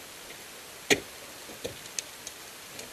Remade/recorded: recorded